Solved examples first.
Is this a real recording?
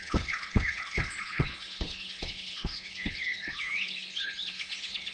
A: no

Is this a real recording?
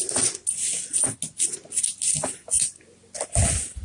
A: yes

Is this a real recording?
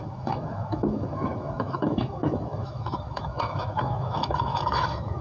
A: no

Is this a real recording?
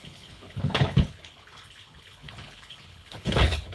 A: no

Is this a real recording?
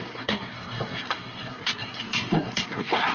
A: no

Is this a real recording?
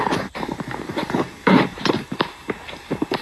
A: no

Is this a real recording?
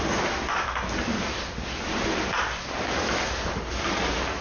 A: yes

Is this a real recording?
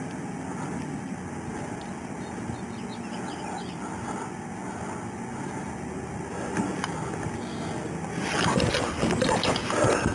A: yes